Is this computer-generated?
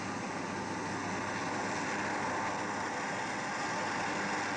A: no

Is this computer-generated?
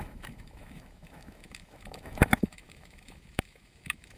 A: yes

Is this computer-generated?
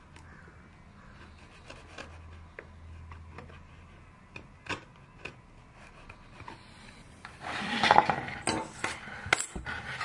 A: no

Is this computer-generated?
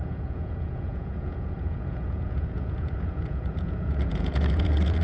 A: yes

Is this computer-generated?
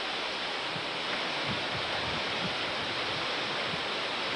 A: no